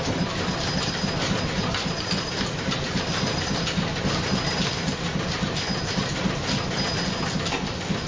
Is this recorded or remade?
recorded